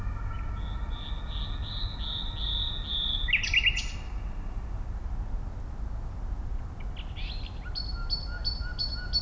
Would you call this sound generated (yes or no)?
no